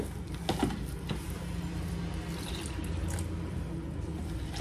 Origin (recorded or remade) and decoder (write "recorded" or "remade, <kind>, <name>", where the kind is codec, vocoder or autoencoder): recorded